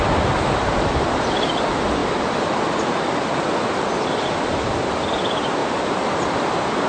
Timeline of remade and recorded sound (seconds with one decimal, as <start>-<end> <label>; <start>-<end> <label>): 0.0-5.6 recorded; 5.6-6.3 remade; 6.3-6.9 recorded